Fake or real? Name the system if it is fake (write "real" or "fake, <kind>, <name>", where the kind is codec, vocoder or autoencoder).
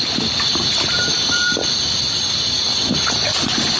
real